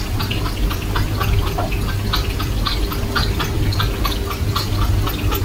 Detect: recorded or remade remade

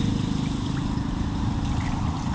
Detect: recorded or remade recorded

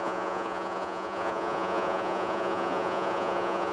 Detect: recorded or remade remade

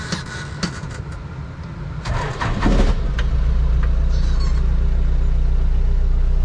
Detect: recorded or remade recorded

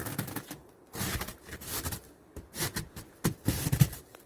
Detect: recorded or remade remade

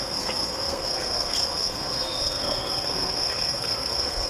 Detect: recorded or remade remade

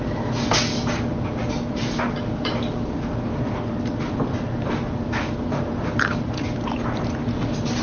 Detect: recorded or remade recorded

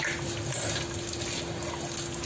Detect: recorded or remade recorded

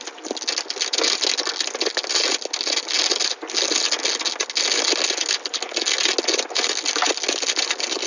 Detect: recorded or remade recorded